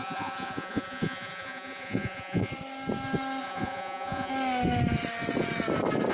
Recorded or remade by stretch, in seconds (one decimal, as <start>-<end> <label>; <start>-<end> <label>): 0.0-2.5 remade; 2.5-3.4 recorded; 3.4-4.3 remade; 4.3-6.1 recorded